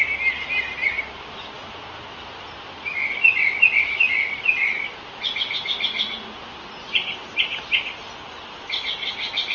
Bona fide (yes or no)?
yes